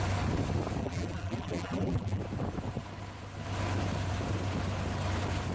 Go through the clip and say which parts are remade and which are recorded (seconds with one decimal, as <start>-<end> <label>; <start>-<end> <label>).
0.0-0.8 recorded; 0.8-2.2 remade; 2.2-5.5 recorded